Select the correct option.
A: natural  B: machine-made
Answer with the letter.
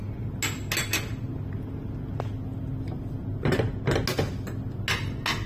A